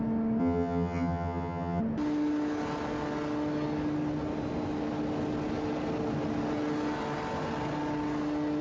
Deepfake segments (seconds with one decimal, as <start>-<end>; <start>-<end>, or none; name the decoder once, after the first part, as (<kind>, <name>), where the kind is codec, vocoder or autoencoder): 0.4-1.8 (vocoder, HiFi-GAN)